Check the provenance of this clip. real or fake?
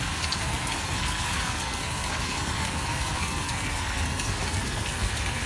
fake